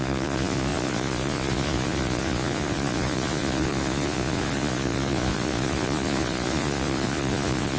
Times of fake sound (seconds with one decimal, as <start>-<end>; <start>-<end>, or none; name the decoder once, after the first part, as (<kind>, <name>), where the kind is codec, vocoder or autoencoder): 0.0-7.8 (vocoder, Vocos)